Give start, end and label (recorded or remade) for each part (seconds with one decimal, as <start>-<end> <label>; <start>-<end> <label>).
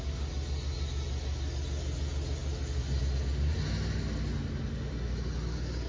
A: 0.0-5.9 recorded